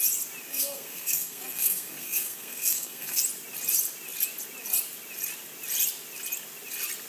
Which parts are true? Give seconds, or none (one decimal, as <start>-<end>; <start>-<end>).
0.0-0.5; 3.2-7.1